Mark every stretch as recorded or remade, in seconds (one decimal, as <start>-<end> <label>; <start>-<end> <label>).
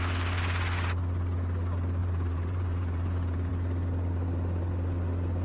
0.0-2.0 recorded; 2.0-3.5 remade; 3.5-5.4 recorded